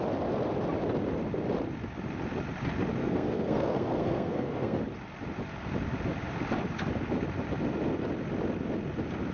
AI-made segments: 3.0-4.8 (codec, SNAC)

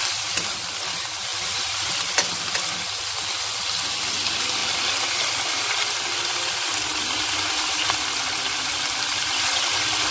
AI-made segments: none